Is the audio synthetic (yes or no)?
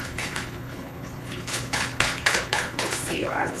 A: yes